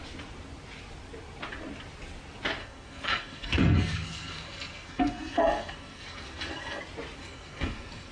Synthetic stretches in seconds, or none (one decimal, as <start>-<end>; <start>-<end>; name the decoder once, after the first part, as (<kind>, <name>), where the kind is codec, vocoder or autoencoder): 2.6-6.8 (codec, SNAC); 7.2-8.1